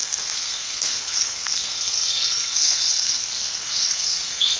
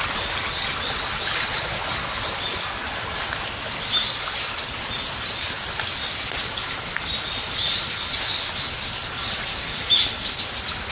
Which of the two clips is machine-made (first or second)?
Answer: first